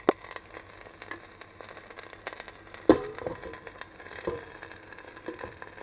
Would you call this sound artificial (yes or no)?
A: no